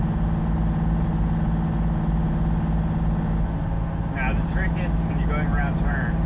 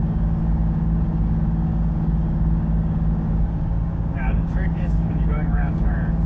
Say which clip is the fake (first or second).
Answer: second